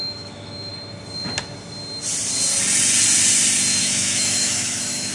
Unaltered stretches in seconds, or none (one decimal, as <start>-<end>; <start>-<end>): 0.7-3.8

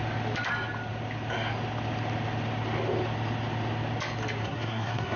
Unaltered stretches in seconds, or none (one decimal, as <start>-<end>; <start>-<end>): 0.0-4.4

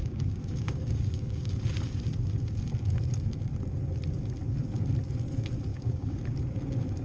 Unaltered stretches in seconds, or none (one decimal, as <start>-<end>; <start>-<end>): 1.5-5.7; 6.2-7.0

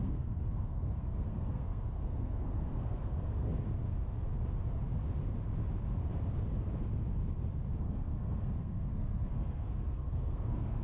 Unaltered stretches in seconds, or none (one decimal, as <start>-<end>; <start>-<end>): 3.5-7.8

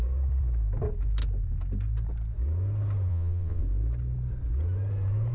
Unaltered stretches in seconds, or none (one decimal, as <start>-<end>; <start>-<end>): 0.0-3.1; 3.6-5.3